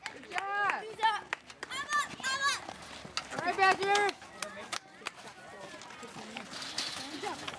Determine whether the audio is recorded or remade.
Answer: recorded